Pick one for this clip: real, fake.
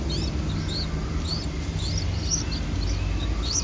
real